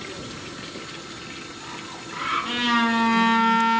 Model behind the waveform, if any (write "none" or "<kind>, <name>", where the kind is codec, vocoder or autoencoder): none